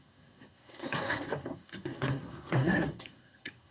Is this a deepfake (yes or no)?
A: yes